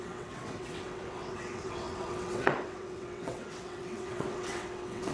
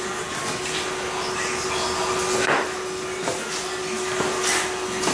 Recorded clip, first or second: second